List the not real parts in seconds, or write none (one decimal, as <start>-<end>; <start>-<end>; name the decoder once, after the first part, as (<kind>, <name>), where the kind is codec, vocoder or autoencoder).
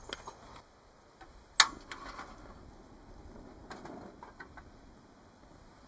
none